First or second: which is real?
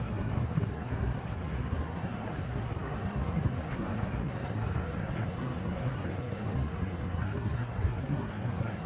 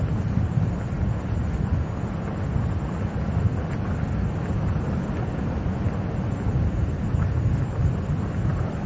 second